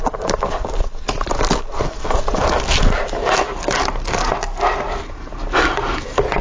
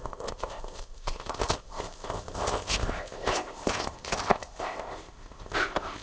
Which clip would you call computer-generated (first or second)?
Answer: second